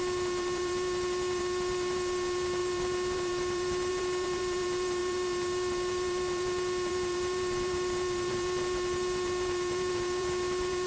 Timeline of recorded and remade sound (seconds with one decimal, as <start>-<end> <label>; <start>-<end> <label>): 0.0-10.9 remade